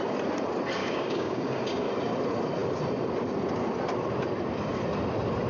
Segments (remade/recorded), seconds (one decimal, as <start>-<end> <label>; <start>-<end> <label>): 0.0-0.8 recorded; 0.8-1.9 remade; 1.9-5.5 recorded